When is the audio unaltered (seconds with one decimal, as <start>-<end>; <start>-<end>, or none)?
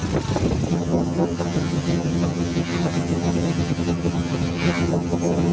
0.0-0.7